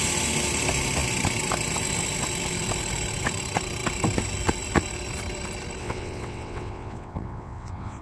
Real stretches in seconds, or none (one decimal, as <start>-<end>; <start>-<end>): 0.0-5.8